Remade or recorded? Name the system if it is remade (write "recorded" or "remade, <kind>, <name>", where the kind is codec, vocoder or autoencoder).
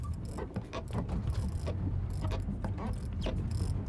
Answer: recorded